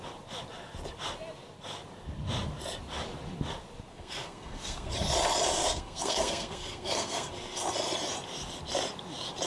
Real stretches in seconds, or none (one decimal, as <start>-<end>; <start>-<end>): 0.0-3.9; 4.9-5.6; 7.3-9.5